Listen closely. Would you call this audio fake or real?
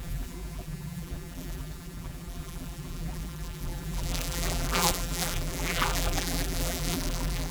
fake